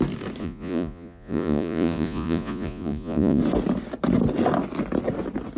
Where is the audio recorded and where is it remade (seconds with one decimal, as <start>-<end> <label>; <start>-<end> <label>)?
0.0-0.4 recorded; 0.4-3.4 remade; 3.4-5.6 recorded